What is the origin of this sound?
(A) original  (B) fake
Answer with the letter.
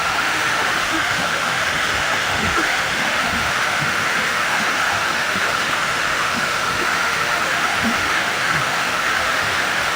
B